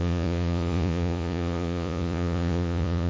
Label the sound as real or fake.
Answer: fake